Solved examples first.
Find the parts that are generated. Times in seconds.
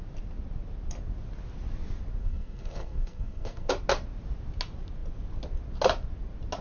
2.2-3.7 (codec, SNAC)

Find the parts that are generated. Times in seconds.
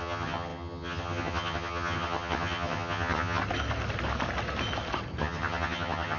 0.0-3.4 (vocoder, HiFi-GAN); 5.2-6.2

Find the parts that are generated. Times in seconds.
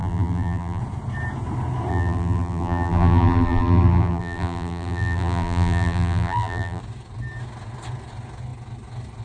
0.0-0.8 (vocoder, BigVGAN v2); 1.9-6.8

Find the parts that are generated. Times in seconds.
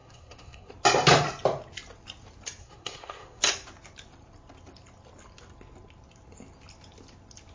0.0-0.7 (codec, SNAC); 2.6-3.4